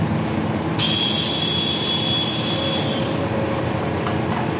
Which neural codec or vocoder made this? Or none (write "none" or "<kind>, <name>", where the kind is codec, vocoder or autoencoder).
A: none